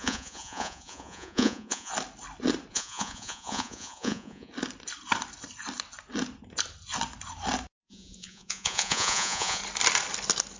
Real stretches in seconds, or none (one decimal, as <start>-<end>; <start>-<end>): 1.9-2.7; 4.5-7.8; 9.6-10.6